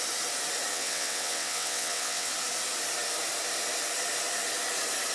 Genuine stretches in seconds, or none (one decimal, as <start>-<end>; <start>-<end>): 0.0-0.7; 2.3-5.1